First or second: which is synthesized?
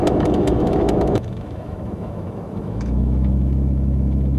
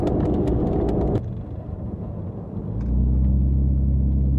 first